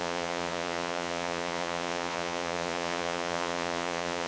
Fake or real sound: fake